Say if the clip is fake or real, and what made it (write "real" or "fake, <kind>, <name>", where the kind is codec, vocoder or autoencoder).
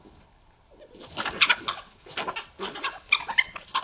real